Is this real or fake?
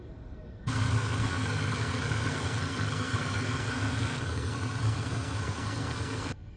fake